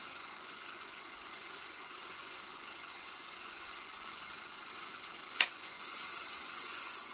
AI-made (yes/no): yes